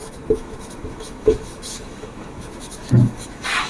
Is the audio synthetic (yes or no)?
yes